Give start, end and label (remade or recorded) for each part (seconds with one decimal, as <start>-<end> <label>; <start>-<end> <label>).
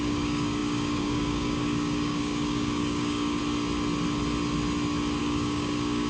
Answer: 0.0-3.4 remade; 3.4-5.2 recorded; 5.2-6.1 remade